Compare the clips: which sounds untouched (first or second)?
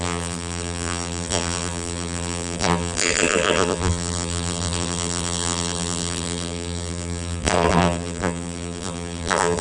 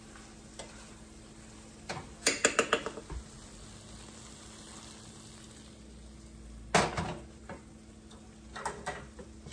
second